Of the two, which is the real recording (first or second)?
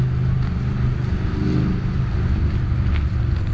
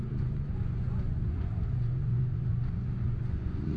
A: first